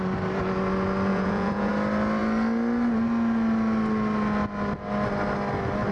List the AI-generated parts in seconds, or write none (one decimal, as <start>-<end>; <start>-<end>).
1.1-1.7